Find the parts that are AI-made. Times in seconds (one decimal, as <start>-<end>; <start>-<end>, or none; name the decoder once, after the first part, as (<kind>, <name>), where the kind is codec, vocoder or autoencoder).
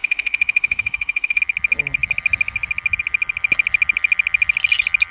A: 0.0-1.4 (autoencoder, DAC-VAE)